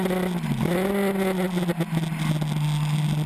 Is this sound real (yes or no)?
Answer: yes